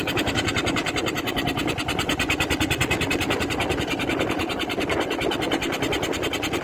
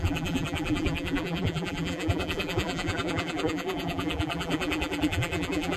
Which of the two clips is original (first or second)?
first